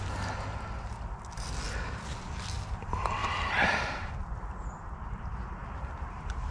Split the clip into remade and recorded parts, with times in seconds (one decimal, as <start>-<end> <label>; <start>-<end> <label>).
0.0-3.2 recorded; 3.2-4.3 remade; 4.3-6.5 recorded